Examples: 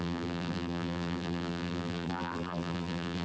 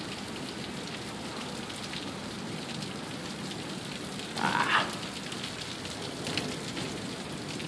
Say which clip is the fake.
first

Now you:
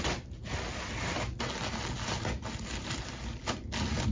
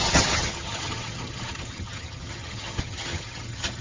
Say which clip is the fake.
second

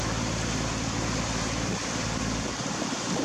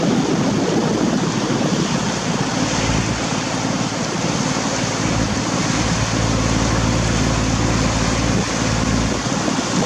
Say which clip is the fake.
first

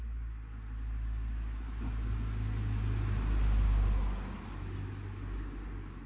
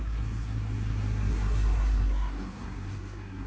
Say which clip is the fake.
second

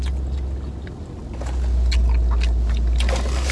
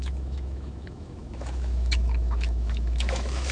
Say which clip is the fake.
second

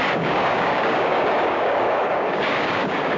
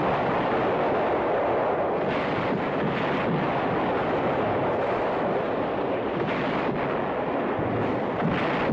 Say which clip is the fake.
first